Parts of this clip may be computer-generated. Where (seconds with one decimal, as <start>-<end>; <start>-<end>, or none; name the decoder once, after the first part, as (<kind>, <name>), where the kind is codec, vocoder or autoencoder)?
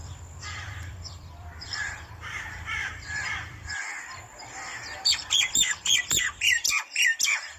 0.0-7.6 (vocoder, BigVGAN v2)